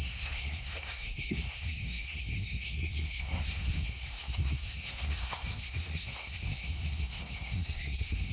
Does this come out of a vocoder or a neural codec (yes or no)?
yes